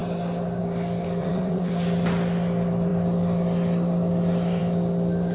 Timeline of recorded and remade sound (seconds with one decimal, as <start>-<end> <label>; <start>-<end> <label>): 0.0-1.2 recorded; 1.2-1.7 remade; 1.7-5.3 recorded